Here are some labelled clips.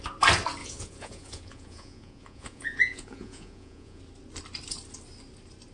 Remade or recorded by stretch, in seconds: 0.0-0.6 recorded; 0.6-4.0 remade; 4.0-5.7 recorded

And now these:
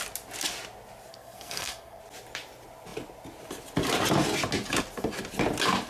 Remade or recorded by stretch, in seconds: 0.0-1.1 recorded; 1.1-2.0 remade; 2.0-5.9 recorded

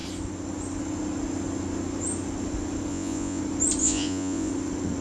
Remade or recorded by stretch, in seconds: 0.0-2.9 recorded; 2.9-3.4 remade; 3.4-3.8 recorded; 3.8-4.5 remade; 4.5-5.0 recorded

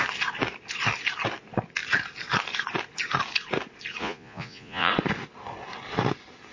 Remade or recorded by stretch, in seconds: 0.0-4.0 recorded; 4.0-4.9 remade; 4.9-6.5 recorded

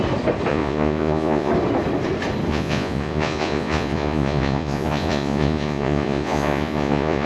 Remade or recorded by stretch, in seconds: 0.0-0.5 recorded; 0.5-1.5 remade; 1.5-2.5 recorded; 2.5-7.3 remade

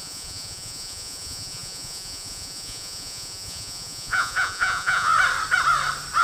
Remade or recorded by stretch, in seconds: 0.0-5.1 remade; 5.1-6.2 recorded

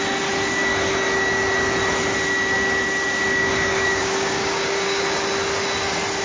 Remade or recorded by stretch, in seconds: 0.0-3.3 recorded; 3.3-5.0 remade; 5.0-6.2 recorded

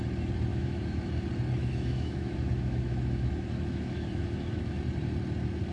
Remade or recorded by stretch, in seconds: 0.0-0.5 recorded; 0.5-1.1 remade; 1.1-1.6 recorded; 1.6-4.8 remade; 4.8-5.7 recorded